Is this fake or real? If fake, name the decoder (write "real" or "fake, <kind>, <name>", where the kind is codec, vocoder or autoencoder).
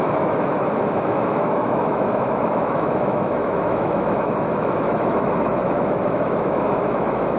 fake, autoencoder, DAC-VAE